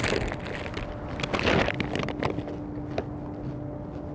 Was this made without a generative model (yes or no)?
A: yes